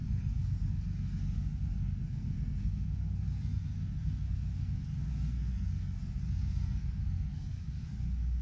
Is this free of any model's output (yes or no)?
no